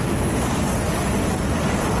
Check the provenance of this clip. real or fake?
real